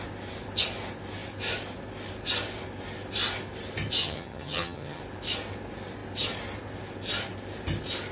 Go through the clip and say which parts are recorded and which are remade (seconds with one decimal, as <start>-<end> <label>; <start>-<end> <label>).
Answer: 0.0-4.0 recorded; 4.0-5.0 remade; 5.0-8.1 recorded